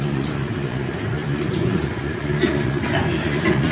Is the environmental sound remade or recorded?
remade